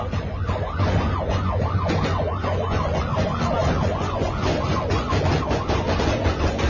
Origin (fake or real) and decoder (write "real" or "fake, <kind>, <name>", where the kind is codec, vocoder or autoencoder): fake, vocoder, Vocos